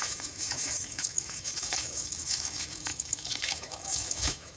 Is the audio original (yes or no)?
no